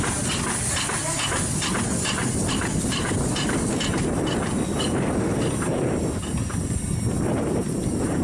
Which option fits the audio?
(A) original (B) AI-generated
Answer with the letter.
A